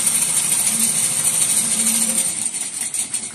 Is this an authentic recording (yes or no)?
yes